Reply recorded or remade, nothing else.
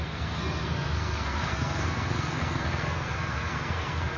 remade